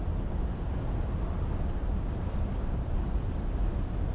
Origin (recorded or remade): recorded